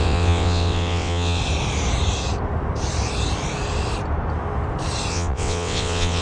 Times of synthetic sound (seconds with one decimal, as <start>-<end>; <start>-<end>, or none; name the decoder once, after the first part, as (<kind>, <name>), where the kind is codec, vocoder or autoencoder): 0.0-1.4 (vocoder, WaveNeXt); 5.1-6.2